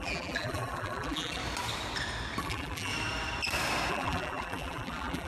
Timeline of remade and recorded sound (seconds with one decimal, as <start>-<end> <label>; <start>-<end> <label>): 0.0-1.4 remade; 1.4-2.4 recorded; 2.4-2.9 remade; 2.9-3.9 recorded; 3.9-5.3 remade